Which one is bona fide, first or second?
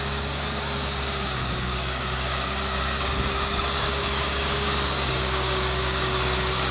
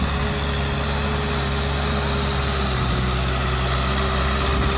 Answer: second